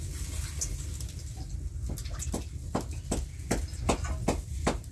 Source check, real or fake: real